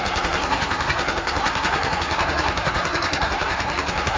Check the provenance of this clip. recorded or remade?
remade